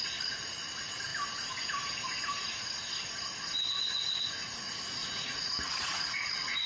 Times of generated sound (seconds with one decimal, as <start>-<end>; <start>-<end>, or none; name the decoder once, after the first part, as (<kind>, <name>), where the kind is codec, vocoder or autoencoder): 5.0-6.7 (vocoder, Vocos)